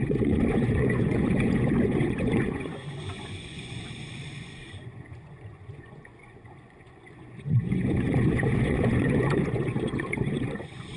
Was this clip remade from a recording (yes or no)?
yes